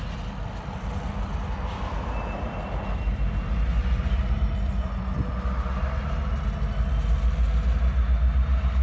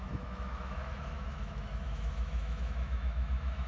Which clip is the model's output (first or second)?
second